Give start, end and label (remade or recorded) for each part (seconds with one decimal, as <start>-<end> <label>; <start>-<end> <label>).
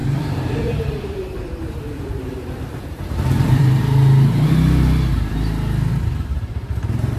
0.0-3.8 remade; 3.8-6.3 recorded; 6.3-7.2 remade